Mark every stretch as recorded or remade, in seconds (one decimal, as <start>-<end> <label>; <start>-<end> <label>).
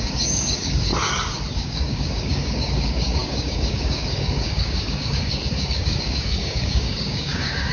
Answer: 0.0-0.9 remade; 0.9-1.5 recorded; 1.5-7.7 remade